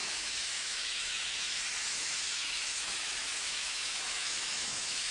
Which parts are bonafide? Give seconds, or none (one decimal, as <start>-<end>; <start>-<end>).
1.6-2.0

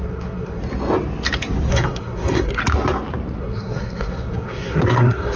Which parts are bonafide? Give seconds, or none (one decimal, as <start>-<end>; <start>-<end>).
0.6-1.7; 2.6-3.4

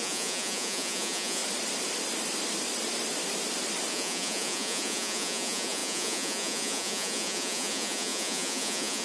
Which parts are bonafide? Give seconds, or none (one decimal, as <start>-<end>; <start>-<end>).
1.4-3.9

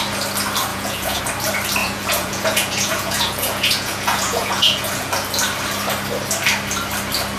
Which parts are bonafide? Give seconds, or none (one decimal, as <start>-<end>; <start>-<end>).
0.0-0.7; 1.2-1.8; 5.1-7.4

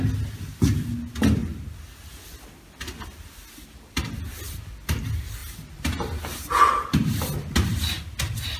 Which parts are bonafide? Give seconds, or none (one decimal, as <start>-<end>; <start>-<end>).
0.0-8.6

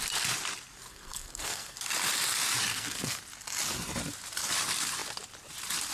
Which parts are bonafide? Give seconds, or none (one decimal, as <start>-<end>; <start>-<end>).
0.0-0.9; 1.8-2.7; 3.2-5.9

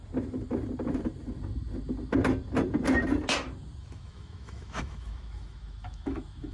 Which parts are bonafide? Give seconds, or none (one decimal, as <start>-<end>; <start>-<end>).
0.0-3.8